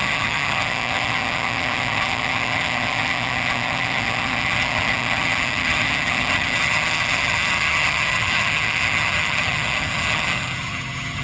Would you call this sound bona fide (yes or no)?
no